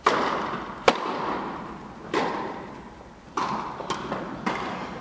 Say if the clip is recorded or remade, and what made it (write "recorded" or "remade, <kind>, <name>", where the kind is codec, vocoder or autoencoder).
remade, vocoder, BigVGAN v2